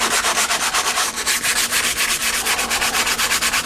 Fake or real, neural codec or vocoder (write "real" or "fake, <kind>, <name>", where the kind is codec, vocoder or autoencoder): fake, vocoder, BigVGAN v2